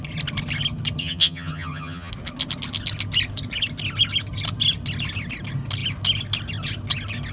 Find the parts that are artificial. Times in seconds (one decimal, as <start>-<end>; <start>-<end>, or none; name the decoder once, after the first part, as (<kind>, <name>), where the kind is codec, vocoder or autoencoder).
1.0-2.1 (vocoder, HiFi-GAN)